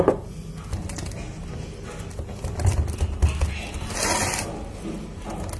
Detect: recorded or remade recorded